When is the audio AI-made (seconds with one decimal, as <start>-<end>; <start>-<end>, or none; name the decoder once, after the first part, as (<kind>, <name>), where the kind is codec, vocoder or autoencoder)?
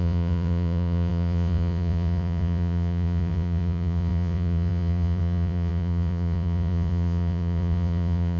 0.0-8.4 (vocoder, Vocos)